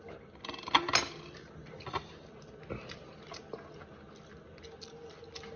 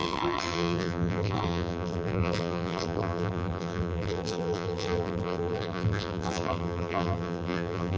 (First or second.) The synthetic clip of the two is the second